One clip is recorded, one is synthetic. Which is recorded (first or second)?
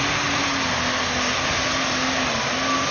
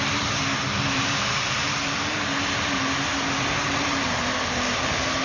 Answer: first